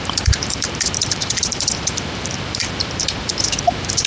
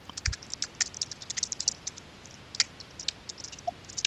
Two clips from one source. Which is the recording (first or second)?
second